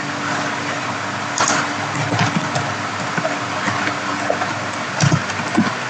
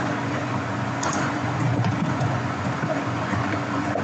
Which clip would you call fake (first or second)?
second